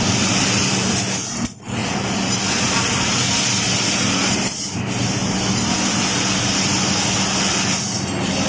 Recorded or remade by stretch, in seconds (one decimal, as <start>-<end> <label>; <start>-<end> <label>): 0.0-8.5 recorded